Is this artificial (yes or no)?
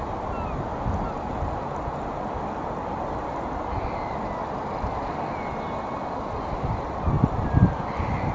no